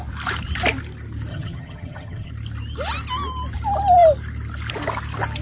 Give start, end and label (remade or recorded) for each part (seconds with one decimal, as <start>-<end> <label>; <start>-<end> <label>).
0.0-1.3 recorded; 1.3-2.3 remade; 2.3-5.4 recorded